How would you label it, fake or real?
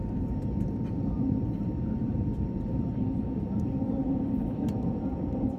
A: fake